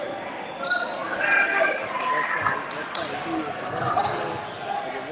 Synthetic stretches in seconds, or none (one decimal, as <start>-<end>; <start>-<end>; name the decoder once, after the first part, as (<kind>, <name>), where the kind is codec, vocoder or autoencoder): none

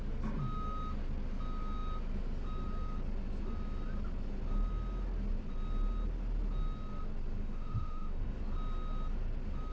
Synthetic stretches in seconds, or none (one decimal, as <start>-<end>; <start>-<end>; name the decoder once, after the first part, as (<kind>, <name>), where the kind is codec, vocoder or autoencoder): 7.4-8.4 (autoencoder, DAC-VAE)

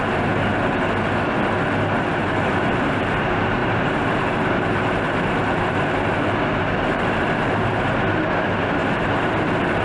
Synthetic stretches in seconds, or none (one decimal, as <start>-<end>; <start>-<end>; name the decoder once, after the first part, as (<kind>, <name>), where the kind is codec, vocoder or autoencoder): 2.2-3.0 (vocoder, BigVGAN v2); 3.6-7.8; 8.8-9.8

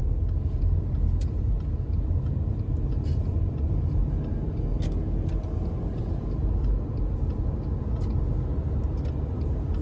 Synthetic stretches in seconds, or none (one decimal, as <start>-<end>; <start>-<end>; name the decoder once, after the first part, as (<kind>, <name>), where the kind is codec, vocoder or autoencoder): none

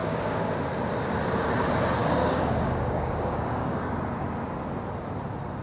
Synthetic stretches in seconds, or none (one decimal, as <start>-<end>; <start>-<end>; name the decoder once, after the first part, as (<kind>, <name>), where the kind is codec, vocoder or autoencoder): 0.0-0.5 (codec, DAC); 2.0-3.9

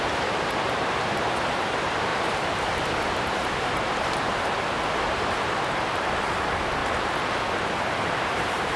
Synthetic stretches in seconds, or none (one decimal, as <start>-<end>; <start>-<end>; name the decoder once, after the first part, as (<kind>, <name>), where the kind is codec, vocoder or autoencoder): 0.0-6.8 (vocoder, BigVGAN v2); 7.9-8.8

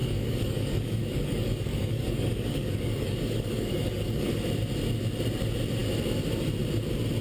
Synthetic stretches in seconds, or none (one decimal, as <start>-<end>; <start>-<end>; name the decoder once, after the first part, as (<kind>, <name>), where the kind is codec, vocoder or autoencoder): 0.0-4.3 (codec, DAC)

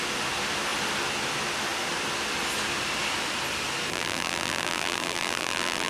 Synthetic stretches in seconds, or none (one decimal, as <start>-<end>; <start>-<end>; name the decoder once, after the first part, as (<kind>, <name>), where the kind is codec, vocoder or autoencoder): 3.9-5.9 (vocoder, BigVGAN v2)